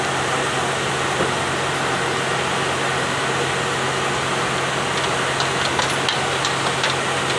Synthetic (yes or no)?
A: no